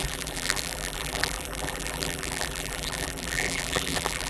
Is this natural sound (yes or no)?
no